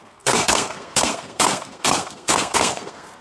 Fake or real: fake